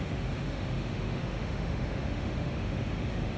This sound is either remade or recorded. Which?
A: remade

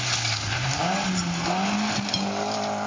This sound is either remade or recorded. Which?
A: recorded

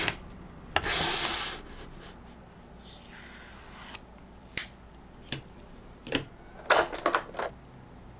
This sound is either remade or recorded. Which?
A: recorded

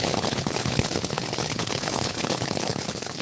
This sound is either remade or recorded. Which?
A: remade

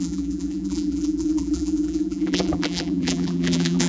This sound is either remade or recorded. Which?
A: remade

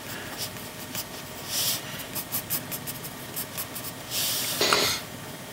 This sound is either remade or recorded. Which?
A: recorded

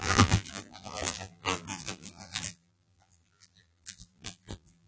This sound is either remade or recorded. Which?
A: remade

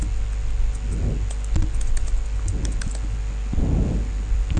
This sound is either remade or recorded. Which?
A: recorded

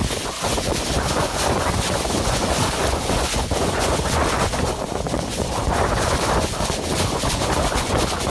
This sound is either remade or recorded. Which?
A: remade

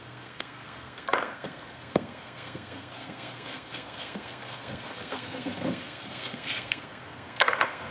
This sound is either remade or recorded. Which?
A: remade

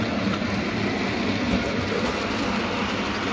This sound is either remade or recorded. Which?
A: recorded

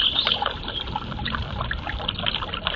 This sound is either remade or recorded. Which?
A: remade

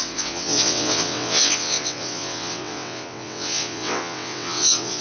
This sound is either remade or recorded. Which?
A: remade